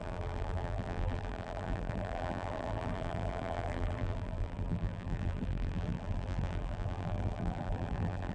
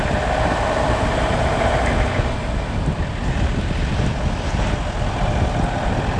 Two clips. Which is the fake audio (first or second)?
first